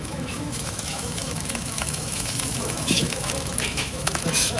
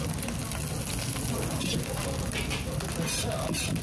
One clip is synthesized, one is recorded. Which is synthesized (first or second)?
first